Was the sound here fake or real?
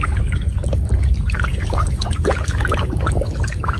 fake